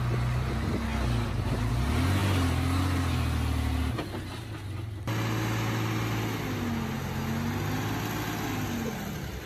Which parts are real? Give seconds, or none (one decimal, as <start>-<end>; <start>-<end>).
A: 0.0-9.5